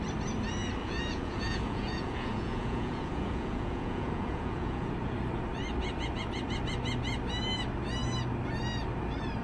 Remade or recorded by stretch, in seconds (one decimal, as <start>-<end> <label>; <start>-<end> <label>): 0.0-0.8 recorded; 0.8-4.9 remade; 4.9-9.4 recorded